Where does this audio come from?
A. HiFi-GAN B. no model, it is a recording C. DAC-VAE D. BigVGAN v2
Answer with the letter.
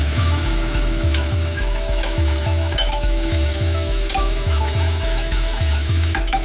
C